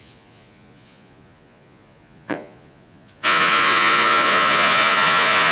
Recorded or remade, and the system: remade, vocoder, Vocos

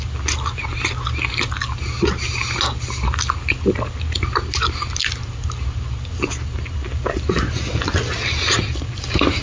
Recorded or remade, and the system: recorded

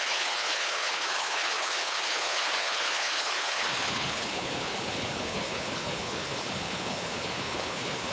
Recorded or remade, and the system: remade, codec, HILCodec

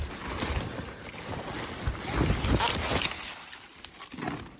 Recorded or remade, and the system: recorded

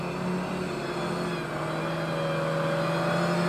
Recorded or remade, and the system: recorded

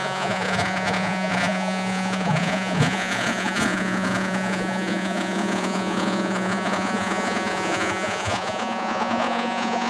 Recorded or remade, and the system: remade, vocoder, Vocos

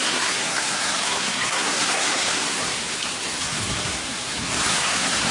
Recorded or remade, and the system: remade, codec, SNAC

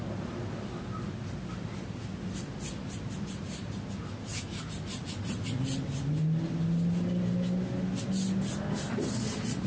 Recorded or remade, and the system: recorded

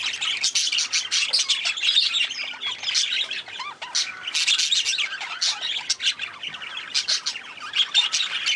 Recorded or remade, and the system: recorded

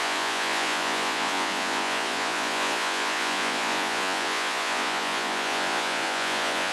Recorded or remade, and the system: remade, vocoder, Vocos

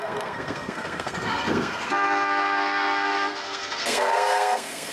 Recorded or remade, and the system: remade, codec, SNAC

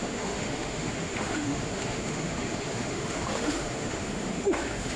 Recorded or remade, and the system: remade, autoencoder, DAC-VAE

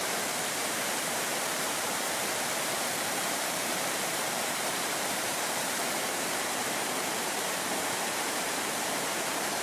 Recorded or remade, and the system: remade, vocoder, BigVGAN v2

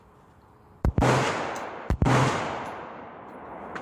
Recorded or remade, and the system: recorded